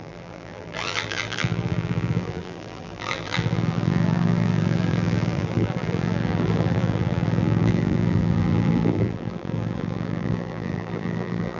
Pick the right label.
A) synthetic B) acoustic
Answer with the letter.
A